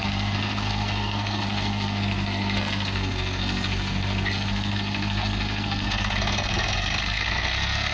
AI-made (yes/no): yes